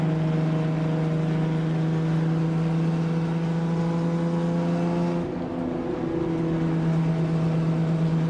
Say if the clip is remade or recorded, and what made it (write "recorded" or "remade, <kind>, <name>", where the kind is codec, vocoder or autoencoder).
recorded